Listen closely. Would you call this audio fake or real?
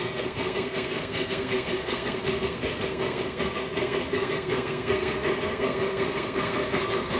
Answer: fake